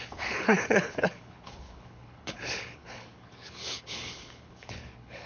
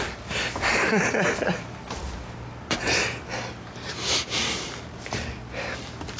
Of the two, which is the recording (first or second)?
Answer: second